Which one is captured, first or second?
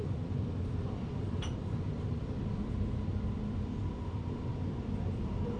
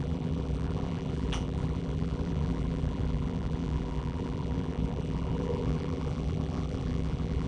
first